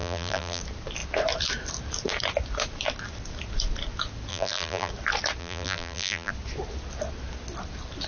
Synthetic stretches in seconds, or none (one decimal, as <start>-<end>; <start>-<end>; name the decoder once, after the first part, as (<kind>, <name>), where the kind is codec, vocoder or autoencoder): 0.0-0.6 (vocoder, BigVGAN v2); 4.3-4.9; 5.4-6.3